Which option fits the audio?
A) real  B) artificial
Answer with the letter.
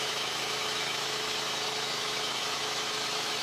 B